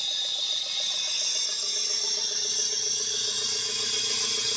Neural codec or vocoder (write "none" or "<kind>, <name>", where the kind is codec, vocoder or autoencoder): none